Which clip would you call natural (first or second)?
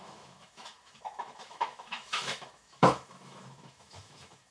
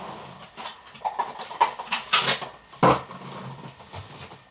second